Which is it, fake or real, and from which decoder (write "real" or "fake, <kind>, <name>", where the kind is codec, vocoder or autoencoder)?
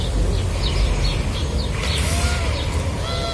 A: real